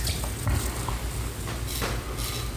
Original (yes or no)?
yes